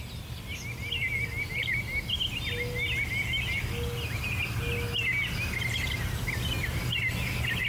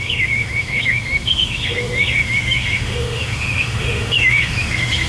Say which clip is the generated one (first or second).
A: second